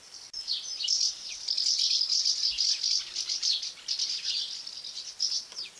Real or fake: real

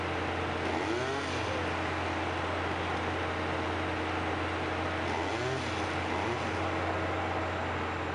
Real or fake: real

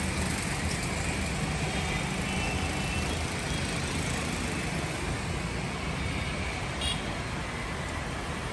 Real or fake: real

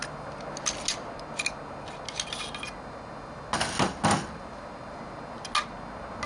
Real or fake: real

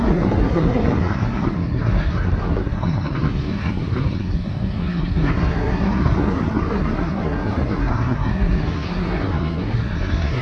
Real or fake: fake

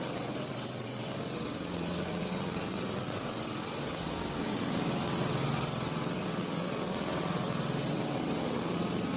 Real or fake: fake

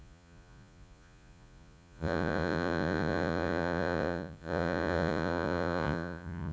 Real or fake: fake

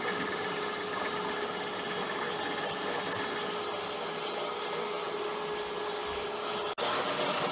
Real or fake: real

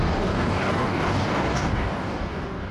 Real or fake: fake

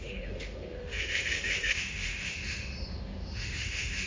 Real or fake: fake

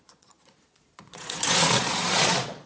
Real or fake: fake